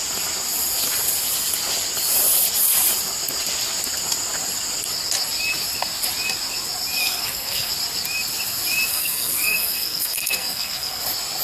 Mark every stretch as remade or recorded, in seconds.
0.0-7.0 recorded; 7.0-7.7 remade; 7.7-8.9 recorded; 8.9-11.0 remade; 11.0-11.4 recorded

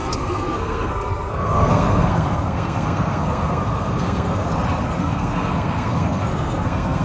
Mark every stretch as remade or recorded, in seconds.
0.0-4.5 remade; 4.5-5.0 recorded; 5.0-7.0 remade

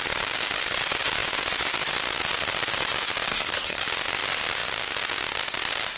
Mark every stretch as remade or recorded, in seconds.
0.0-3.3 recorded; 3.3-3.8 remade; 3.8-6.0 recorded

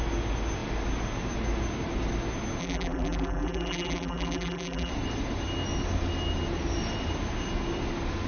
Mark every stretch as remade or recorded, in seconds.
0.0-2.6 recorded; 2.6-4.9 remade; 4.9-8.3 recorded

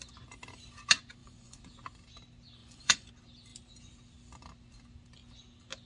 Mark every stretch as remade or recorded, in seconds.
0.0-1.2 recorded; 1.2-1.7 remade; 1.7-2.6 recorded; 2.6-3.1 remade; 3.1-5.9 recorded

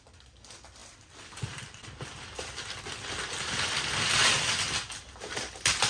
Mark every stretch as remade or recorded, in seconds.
0.0-5.9 recorded

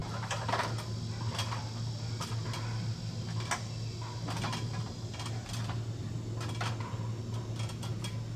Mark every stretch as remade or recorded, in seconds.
0.0-8.4 recorded